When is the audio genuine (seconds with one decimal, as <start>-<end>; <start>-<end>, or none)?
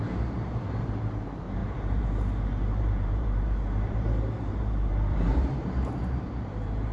none